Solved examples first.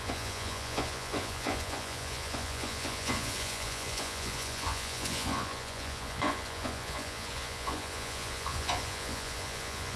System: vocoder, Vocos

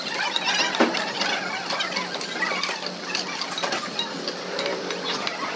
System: none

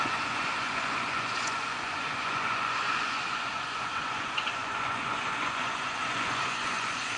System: vocoder, Vocos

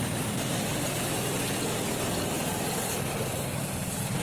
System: none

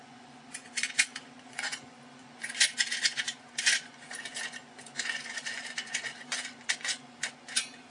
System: vocoder, Vocos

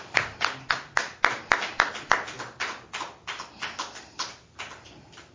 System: none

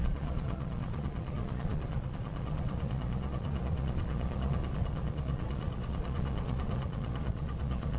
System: vocoder, Vocos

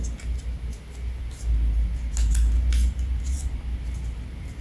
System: none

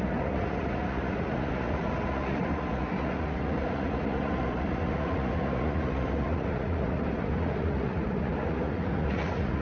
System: vocoder, Vocos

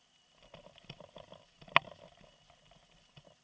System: none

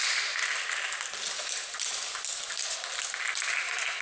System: none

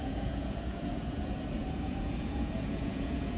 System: vocoder, Vocos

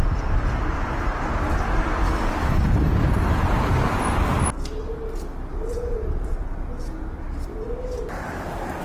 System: none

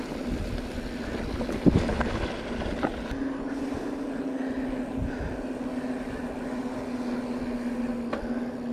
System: none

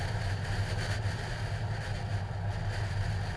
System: none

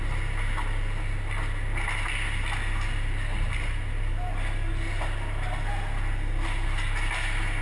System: none